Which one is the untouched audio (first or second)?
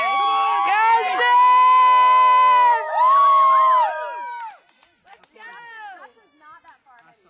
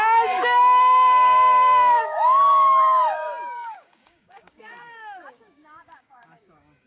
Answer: first